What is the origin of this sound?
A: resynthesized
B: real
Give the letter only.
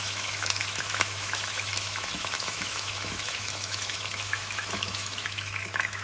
A